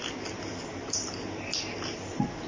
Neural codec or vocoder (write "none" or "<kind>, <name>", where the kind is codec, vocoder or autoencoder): none